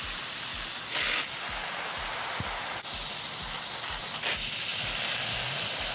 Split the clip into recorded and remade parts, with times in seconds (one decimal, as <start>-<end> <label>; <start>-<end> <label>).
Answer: 0.0-5.9 recorded